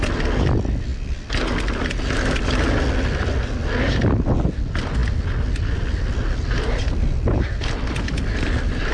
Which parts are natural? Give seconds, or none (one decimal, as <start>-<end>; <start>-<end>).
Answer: 0.0-8.9